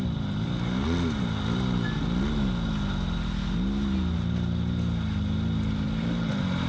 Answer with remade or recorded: recorded